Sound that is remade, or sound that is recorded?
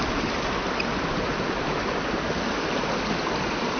remade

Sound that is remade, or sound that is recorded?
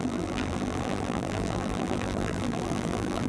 remade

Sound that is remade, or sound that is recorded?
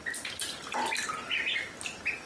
recorded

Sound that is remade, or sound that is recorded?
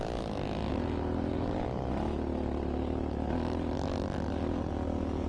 recorded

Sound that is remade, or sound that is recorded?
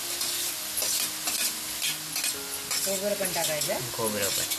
recorded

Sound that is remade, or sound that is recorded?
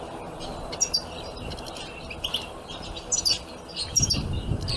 remade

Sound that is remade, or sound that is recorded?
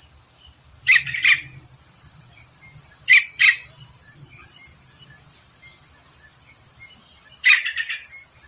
remade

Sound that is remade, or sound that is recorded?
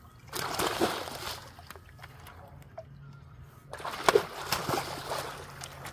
recorded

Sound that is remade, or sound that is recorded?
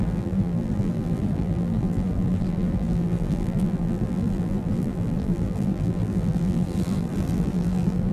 remade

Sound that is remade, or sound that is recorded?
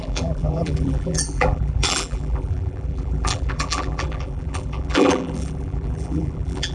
remade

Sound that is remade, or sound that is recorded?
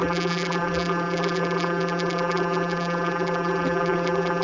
remade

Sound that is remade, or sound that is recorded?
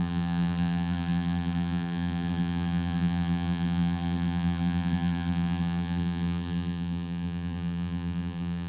remade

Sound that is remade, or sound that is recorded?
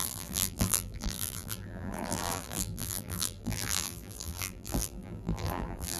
remade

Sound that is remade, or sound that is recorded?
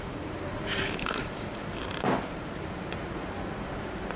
remade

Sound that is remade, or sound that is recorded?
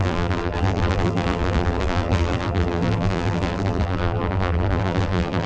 remade